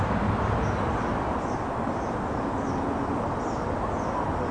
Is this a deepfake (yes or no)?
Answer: no